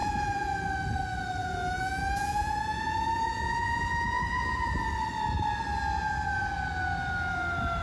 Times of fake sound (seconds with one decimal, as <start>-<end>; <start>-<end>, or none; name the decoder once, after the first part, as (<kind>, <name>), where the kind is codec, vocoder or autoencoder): 0.0-0.5 (vocoder, Vocos); 1.4-4.9